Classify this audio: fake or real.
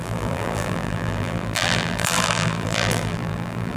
fake